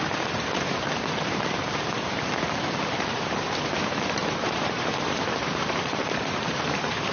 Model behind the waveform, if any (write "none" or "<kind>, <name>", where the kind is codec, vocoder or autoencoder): vocoder, BigVGAN v2